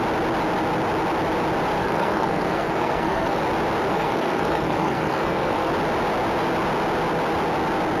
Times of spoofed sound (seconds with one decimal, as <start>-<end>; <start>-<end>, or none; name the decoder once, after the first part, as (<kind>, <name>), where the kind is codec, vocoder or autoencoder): 1.8-3.4 (codec, SNAC); 3.9-5.7